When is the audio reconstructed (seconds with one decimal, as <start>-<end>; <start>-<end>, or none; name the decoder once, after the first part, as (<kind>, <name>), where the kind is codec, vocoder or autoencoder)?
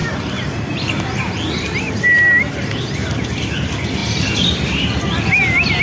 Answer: none